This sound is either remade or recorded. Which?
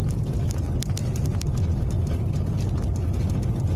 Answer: recorded